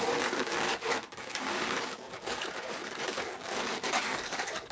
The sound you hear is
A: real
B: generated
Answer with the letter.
B